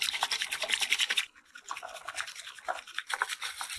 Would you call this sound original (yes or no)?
yes